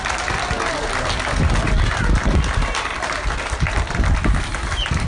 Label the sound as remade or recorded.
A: recorded